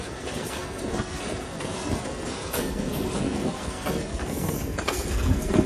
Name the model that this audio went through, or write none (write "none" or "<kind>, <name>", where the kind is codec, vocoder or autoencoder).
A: codec, SNAC